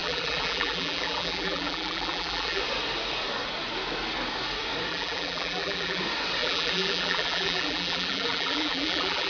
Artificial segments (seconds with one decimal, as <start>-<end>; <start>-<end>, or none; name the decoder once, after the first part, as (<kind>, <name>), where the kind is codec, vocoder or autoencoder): 0.0-2.6 (vocoder, BigVGAN v2); 4.9-6.0; 6.4-9.3

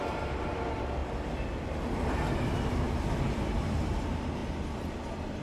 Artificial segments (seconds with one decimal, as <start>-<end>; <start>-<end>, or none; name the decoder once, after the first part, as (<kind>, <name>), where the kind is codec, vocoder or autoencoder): 0.0-1.0 (vocoder, BigVGAN v2); 3.8-4.4